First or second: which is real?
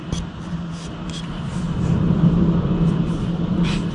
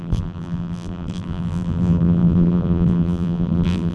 first